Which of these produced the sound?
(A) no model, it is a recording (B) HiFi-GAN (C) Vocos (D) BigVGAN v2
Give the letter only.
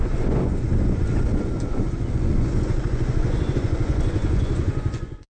C